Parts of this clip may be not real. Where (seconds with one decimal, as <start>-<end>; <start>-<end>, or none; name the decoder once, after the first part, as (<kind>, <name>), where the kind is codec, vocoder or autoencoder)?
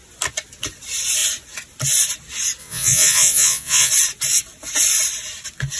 2.6-3.9 (vocoder, Vocos)